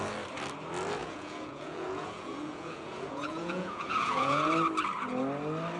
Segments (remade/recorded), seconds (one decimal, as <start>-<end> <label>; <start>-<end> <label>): 0.0-1.0 recorded; 1.0-4.5 remade; 4.5-5.8 recorded